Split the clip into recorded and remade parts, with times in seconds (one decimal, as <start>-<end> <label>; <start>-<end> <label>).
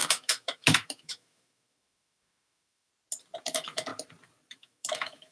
0.0-2.9 remade; 2.9-3.4 recorded; 3.4-3.9 remade; 3.9-4.5 recorded; 4.5-5.3 remade